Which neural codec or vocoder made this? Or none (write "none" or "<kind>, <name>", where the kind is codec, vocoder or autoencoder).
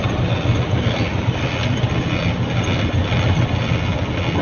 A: none